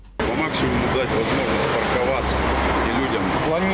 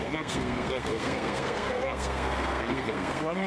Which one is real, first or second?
first